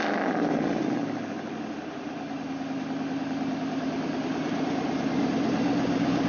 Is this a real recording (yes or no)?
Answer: yes